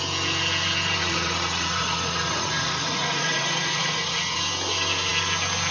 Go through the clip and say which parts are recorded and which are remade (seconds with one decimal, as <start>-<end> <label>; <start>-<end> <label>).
0.0-1.0 recorded; 1.0-4.4 remade; 4.4-5.7 recorded